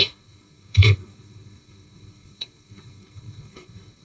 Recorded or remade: remade